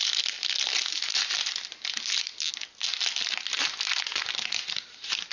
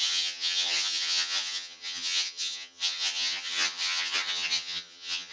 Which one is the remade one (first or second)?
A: second